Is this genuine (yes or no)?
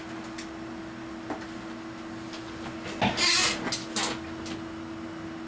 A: yes